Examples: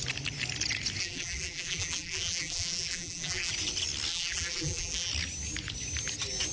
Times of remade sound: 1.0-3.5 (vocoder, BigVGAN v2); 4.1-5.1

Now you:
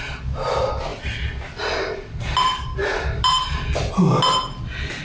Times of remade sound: none

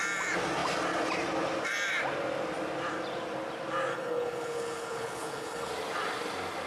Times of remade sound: 3.9-5.7 (codec, HILCodec)

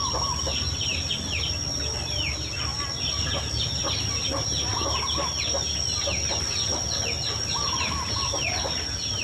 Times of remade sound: none

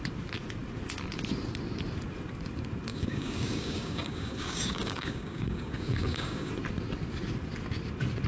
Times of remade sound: 2.9-6.5 (codec, DAC)

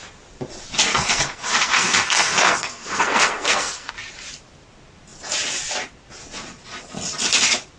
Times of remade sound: 0.9-3.9 (codec, SNAC)

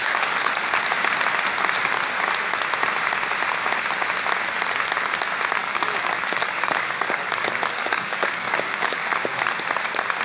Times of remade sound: 0.0-0.5 (codec, DAC); 5.6-9.1